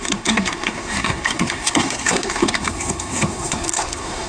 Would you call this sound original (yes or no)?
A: no